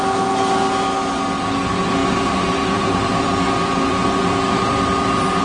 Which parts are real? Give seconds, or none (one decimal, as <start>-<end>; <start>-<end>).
0.0-2.0